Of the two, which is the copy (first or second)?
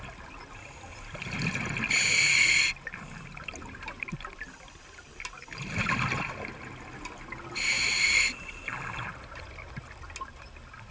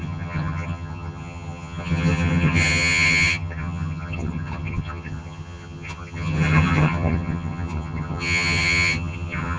second